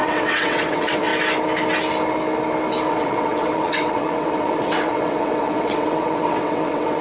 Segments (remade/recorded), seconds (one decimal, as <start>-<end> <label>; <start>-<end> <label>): 0.0-1.1 remade; 1.1-2.9 recorded; 2.9-7.0 remade